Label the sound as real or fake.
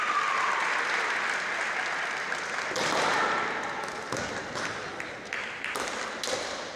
real